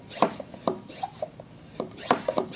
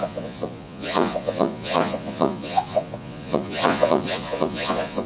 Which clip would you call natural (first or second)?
first